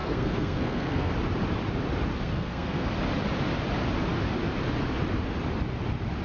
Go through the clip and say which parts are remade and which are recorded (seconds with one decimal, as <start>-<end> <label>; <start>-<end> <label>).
0.0-1.1 remade; 1.1-2.1 recorded; 2.1-2.9 remade; 2.9-6.2 recorded